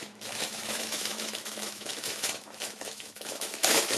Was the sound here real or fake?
fake